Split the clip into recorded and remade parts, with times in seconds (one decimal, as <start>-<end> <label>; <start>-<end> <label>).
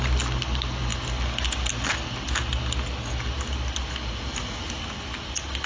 0.0-5.7 recorded